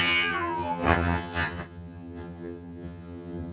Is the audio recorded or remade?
remade